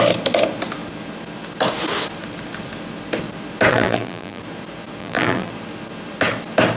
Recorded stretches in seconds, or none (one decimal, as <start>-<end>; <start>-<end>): 0.0-3.7; 4.4-5.0; 5.5-6.8